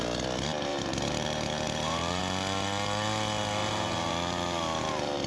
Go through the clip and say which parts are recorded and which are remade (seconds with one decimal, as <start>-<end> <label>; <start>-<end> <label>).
0.0-0.7 recorded; 0.7-2.2 remade; 2.2-5.3 recorded